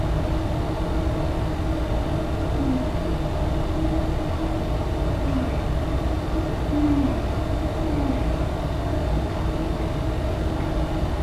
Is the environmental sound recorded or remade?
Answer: recorded